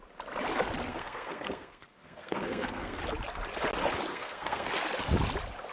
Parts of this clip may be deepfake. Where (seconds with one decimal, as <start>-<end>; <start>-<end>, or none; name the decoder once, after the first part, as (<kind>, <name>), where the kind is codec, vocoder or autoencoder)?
0.9-3.0 (codec, SNAC); 4.1-4.7